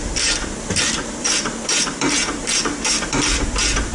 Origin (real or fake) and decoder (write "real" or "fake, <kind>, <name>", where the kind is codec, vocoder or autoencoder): fake, vocoder, BigVGAN v2